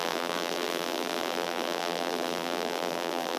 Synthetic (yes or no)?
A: yes